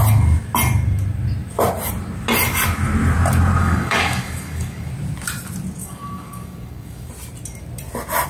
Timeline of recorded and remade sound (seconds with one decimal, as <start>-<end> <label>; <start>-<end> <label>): 0.0-3.6 recorded; 3.6-4.9 remade; 4.9-5.8 recorded; 5.8-7.1 remade; 7.1-8.3 recorded